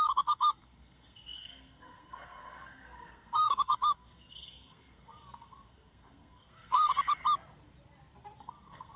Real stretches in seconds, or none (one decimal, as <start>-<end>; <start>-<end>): 7.2-8.4

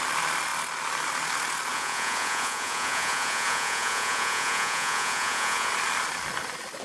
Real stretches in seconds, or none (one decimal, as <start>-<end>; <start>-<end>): 0.0-1.7; 5.7-6.8

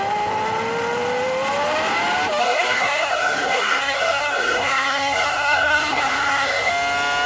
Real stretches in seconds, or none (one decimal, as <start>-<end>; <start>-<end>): 0.0-2.4; 6.7-7.3

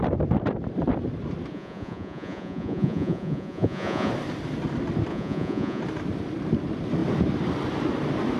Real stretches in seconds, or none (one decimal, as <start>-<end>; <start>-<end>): 0.0-1.5; 4.1-5.1; 5.8-8.4

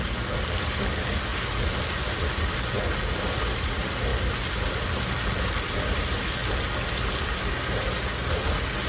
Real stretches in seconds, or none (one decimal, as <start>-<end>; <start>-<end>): 0.0-8.9

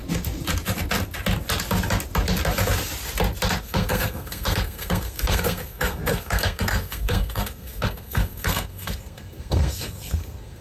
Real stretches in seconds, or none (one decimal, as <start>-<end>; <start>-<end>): 0.0-3.6

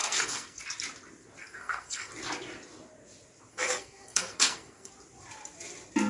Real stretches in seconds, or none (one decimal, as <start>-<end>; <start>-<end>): 0.6-1.4; 2.1-3.5; 4.9-6.1

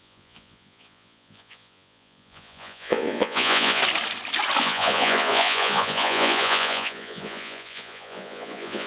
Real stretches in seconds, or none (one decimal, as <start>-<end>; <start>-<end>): 3.8-4.6